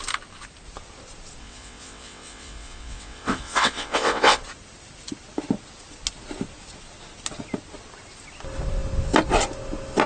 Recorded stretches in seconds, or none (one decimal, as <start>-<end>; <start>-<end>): 0.0-1.4; 4.4-10.1